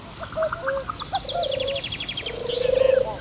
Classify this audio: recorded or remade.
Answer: recorded